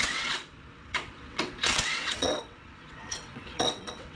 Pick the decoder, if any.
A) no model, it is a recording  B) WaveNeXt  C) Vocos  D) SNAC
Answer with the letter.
B